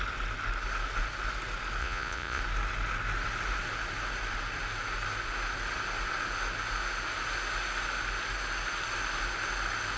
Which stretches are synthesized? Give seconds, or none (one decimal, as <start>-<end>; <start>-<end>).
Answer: 1.8-2.4